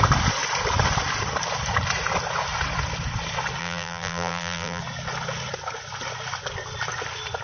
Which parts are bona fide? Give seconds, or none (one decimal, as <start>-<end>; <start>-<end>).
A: 0.0-3.6; 4.8-7.4

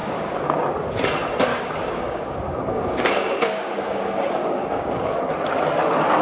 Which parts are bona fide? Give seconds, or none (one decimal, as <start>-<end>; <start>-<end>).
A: 0.6-1.5; 5.2-6.2

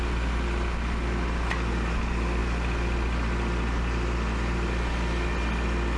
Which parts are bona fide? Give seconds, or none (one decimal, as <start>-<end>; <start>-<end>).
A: 0.0-6.0

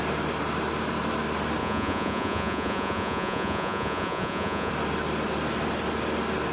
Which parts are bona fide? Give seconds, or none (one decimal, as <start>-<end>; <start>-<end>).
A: 0.0-1.6; 4.7-6.5

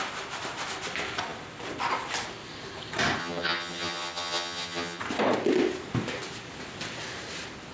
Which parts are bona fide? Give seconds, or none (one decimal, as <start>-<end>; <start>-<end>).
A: 0.0-3.2; 5.0-7.7

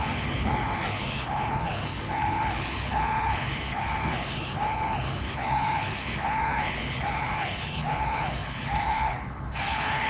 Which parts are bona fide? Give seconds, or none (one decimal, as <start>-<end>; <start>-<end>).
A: none

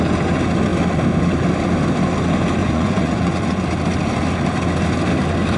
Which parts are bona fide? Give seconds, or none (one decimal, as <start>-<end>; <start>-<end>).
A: 0.0-2.6; 3.6-5.6